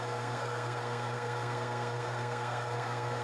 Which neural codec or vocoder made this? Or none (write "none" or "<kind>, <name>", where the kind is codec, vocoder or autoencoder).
codec, SNAC